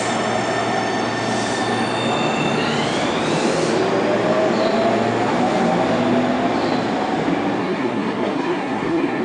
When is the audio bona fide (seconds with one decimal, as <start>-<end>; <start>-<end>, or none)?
0.0-7.6